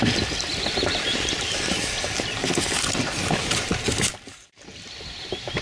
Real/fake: real